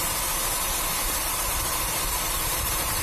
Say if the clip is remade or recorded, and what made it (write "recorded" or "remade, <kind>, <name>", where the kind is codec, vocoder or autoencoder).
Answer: remade, vocoder, BigVGAN v2